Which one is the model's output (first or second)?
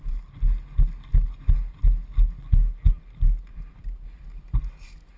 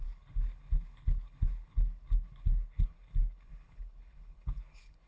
second